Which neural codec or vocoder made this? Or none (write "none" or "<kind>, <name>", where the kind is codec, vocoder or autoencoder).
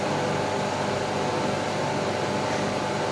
none